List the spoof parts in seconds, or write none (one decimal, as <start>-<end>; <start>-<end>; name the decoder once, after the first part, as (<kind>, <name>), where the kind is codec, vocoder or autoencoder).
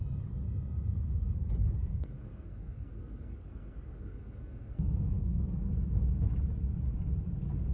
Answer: 1.8-5.7 (codec, SNAC)